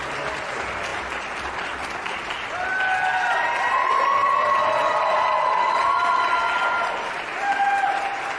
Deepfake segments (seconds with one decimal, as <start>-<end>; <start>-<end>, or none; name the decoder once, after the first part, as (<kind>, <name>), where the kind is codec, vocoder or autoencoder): 4.2-5.0 (vocoder, BigVGAN v2); 6.4-7.1